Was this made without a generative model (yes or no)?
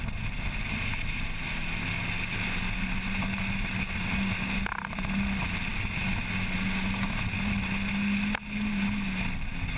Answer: yes